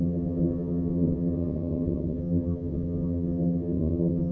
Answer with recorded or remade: remade